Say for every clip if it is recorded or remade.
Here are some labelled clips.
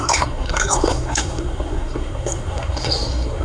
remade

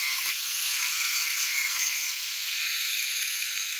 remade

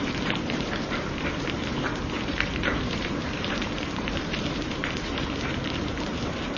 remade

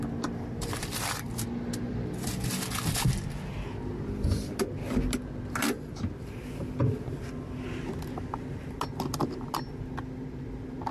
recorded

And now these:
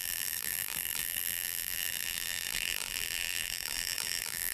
remade